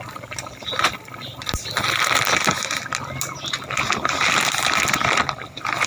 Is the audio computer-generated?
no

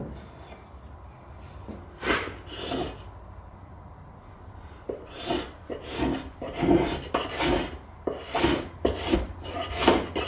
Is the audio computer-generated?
no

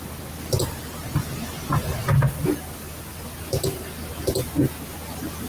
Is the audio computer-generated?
no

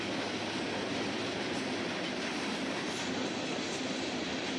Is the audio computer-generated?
no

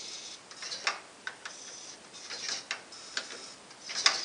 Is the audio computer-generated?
no